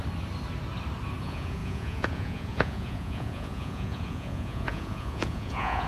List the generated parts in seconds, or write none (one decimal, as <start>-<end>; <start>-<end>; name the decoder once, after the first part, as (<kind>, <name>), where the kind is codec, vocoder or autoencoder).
1.2-5.9 (vocoder, Vocos)